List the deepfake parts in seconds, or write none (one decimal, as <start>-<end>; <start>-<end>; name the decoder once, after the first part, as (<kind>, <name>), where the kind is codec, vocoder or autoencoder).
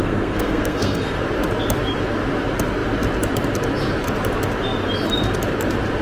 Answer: 0.0-1.2 (codec, SNAC)